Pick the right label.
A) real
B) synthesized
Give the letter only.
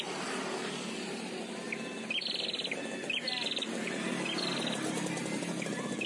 A